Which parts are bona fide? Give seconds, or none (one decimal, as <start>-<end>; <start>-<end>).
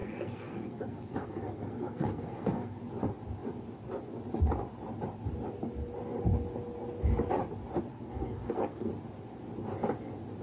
2.8-7.9; 8.9-10.4